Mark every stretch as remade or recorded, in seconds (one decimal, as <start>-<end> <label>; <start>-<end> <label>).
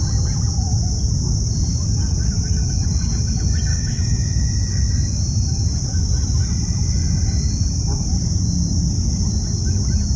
0.0-3.7 recorded; 3.7-4.2 remade; 4.2-10.2 recorded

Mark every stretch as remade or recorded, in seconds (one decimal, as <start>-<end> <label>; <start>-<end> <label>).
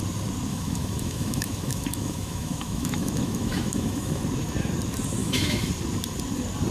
0.0-0.5 recorded; 0.5-4.2 remade; 4.2-5.2 recorded; 5.2-5.7 remade; 5.7-6.7 recorded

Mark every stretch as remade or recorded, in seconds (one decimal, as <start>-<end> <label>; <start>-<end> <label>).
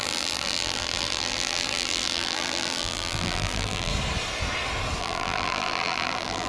0.0-3.9 remade; 3.9-5.0 recorded; 5.0-6.5 remade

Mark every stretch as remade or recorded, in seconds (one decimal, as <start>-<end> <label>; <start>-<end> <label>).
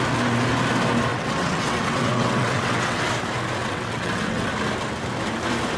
0.0-1.1 recorded; 1.1-3.0 remade; 3.0-3.6 recorded; 3.6-4.5 remade; 4.5-5.8 recorded